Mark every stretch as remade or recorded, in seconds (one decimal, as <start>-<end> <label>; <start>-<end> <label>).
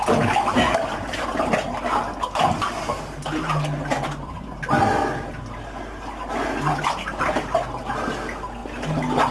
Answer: 0.0-3.9 recorded; 3.9-4.6 remade; 4.6-9.3 recorded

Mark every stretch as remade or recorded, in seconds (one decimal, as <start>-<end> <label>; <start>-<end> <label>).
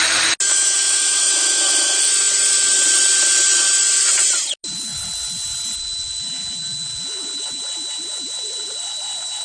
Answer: 0.0-0.5 recorded; 0.5-2.1 remade; 2.1-9.4 recorded